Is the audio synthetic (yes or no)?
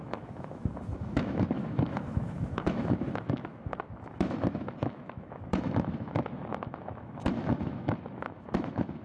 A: yes